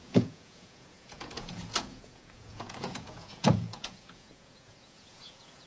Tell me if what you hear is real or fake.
fake